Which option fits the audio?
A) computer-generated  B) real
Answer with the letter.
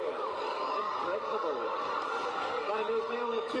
A